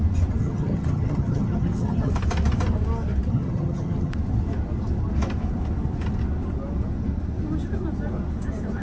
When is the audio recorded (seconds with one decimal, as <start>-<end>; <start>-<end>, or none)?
0.0-0.4; 2.1-3.3; 4.1-8.8